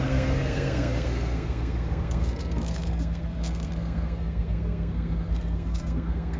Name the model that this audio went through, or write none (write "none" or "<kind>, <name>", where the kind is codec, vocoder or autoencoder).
codec, SNAC